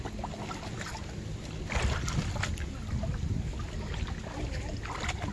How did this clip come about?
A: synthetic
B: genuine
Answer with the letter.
B